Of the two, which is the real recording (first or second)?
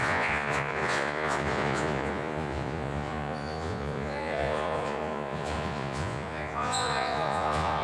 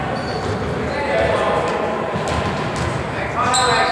second